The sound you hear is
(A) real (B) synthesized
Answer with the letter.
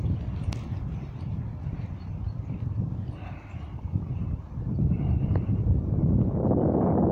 B